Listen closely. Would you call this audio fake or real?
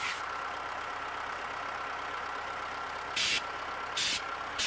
real